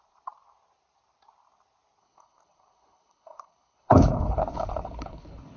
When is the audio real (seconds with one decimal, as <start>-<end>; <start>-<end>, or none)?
0.0-2.0